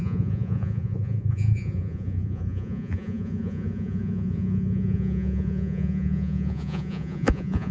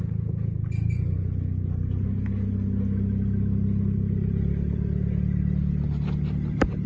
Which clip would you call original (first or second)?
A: second